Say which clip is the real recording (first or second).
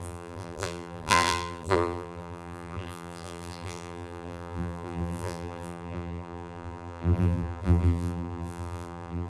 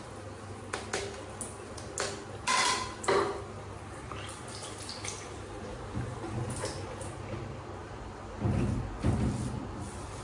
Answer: second